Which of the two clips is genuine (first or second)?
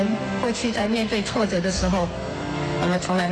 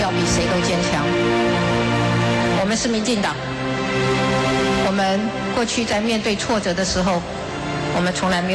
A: second